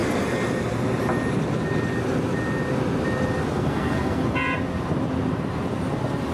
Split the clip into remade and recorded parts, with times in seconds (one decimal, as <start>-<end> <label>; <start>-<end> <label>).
0.0-3.5 recorded; 3.5-4.2 remade; 4.2-6.3 recorded